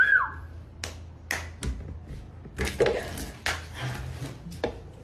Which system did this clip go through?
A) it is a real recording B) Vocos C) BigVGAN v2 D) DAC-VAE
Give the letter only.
A